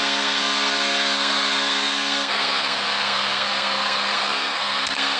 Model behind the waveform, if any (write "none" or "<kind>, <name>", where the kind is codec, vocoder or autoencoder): codec, SNAC